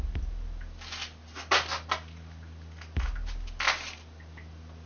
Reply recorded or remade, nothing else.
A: recorded